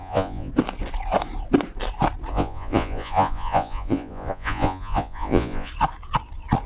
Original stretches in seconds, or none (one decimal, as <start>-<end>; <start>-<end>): 0.5-2.3; 5.7-6.7